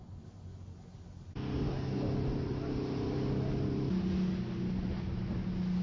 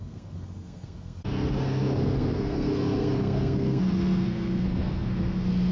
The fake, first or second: second